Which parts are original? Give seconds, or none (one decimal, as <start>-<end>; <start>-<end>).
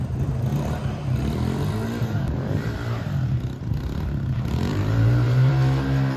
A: 0.0-4.7; 5.5-6.2